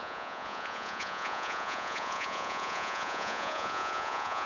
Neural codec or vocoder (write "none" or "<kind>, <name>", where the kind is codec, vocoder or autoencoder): vocoder, Vocos